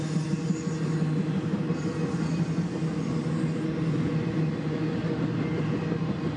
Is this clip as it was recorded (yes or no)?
yes